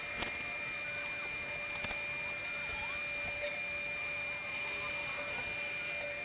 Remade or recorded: recorded